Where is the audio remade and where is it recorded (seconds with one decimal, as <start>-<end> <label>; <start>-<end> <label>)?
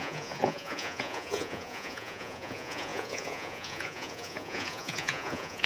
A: 0.0-5.7 remade